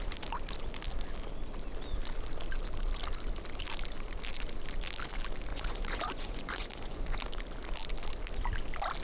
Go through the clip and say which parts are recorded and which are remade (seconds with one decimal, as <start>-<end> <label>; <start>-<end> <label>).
0.0-5.5 recorded; 5.5-7.2 remade; 7.2-9.0 recorded